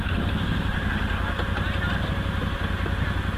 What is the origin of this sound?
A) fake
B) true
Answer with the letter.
B